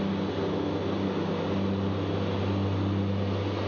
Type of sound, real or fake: real